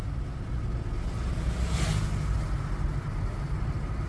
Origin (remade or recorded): recorded